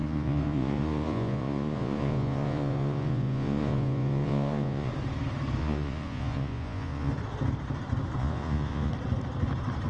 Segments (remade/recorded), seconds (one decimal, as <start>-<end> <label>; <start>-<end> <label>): 0.0-4.9 remade; 4.9-5.6 recorded; 5.6-7.1 remade; 7.1-8.2 recorded; 8.2-8.9 remade; 8.9-9.9 recorded